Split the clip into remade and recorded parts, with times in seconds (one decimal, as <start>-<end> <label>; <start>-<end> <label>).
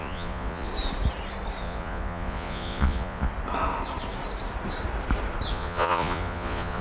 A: 0.0-0.7 remade; 0.7-1.6 recorded; 1.6-3.3 remade; 3.3-5.5 recorded; 5.5-6.8 remade